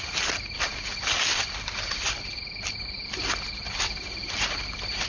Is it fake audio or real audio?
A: real